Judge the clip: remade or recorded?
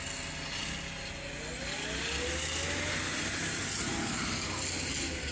recorded